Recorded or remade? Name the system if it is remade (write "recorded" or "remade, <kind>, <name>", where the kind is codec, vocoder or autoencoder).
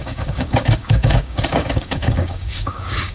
remade, codec, DAC